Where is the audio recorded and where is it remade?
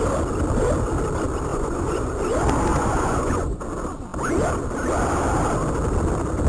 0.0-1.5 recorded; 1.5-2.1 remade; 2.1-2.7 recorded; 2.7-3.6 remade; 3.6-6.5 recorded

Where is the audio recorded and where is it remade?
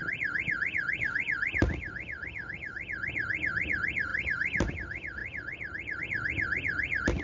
0.0-4.1 recorded; 4.1-4.7 remade; 4.7-5.2 recorded; 5.2-6.0 remade; 6.0-7.2 recorded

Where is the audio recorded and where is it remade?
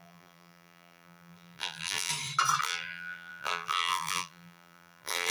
0.0-2.1 remade; 2.1-2.6 recorded; 2.6-5.3 remade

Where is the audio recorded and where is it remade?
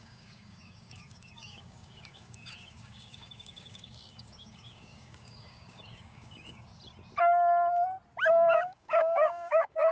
0.0-6.7 remade; 6.7-8.3 recorded; 8.3-9.9 remade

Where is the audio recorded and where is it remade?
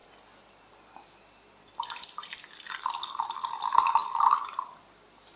0.0-5.4 recorded